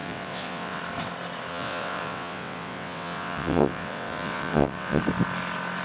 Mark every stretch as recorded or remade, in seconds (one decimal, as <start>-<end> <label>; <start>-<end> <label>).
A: 0.0-0.8 remade; 0.8-1.5 recorded; 1.5-5.0 remade; 5.0-5.8 recorded